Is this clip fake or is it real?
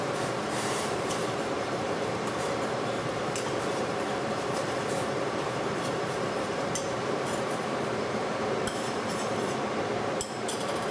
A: fake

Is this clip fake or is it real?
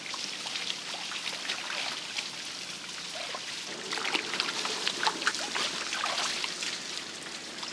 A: real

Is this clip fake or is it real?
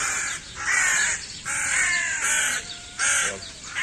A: fake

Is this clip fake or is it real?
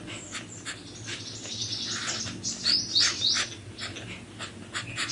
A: real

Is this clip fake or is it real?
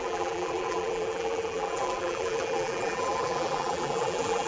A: fake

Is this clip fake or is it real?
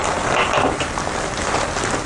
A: real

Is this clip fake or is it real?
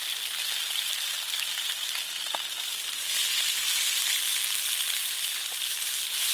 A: real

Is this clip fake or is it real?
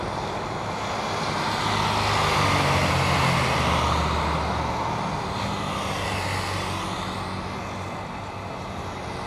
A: real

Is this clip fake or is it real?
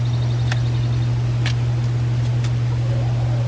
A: real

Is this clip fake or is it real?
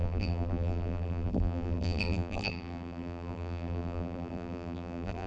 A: fake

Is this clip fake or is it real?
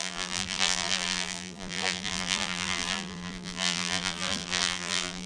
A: fake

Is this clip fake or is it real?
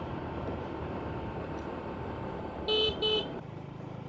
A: fake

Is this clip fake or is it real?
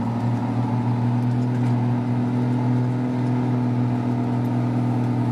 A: real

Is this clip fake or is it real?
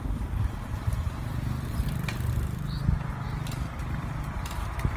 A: fake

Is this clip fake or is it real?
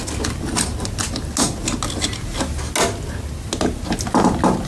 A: real